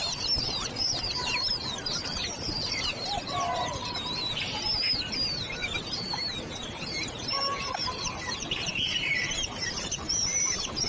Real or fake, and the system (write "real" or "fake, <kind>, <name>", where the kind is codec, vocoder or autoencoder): fake, vocoder, BigVGAN v2